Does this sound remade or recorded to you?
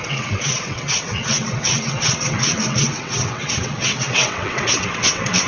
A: remade